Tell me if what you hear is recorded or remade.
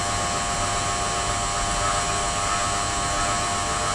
recorded